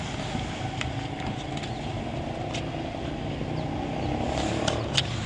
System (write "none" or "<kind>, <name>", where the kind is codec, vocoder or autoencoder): none